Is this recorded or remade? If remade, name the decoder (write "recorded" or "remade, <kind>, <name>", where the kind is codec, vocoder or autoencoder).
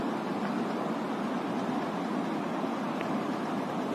recorded